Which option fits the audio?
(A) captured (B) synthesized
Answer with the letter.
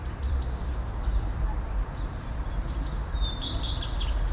B